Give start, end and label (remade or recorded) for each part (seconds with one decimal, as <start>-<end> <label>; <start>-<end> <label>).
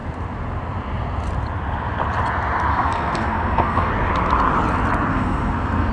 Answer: 0.0-2.7 recorded; 2.7-3.9 remade; 3.9-5.1 recorded; 5.1-5.9 remade